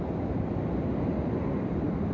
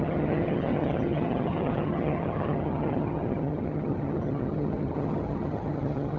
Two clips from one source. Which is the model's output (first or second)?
second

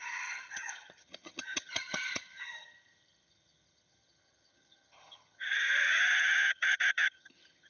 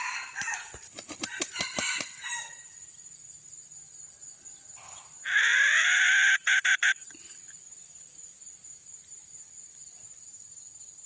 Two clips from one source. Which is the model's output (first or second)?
first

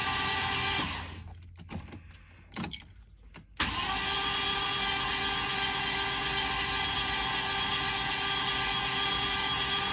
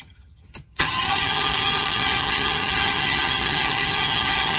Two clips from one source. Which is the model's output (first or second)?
second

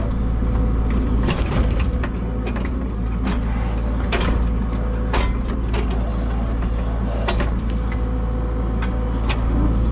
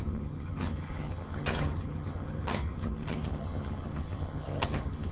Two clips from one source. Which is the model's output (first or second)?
second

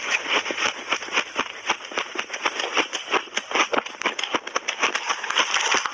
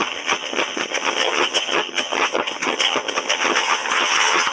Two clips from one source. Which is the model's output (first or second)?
second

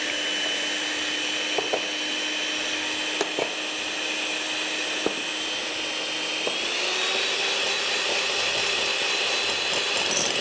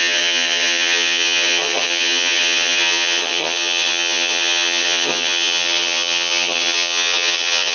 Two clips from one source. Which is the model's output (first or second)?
second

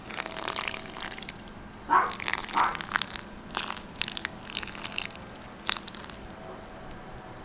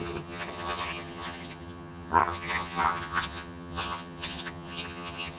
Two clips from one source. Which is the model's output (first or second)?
second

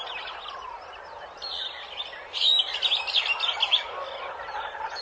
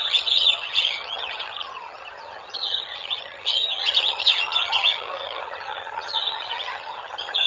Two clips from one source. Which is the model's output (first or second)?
second